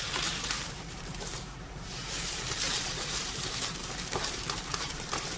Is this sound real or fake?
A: fake